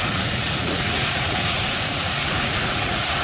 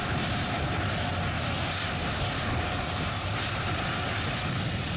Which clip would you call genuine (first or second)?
second